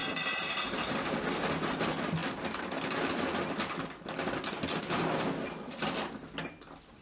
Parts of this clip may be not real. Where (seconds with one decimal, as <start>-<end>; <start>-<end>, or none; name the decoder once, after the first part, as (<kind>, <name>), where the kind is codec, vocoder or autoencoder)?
none